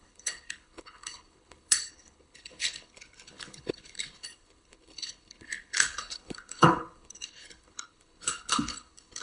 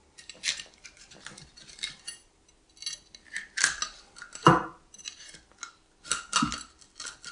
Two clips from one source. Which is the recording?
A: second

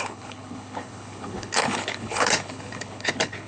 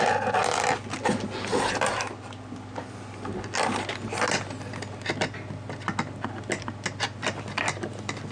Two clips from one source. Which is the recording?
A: second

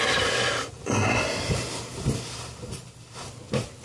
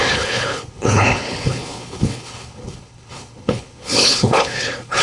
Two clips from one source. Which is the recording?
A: first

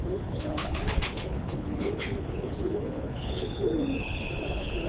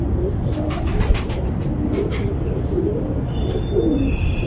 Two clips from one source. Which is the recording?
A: second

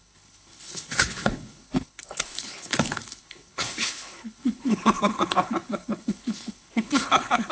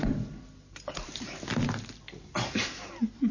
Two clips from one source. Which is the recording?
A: second